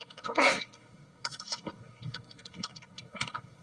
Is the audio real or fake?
fake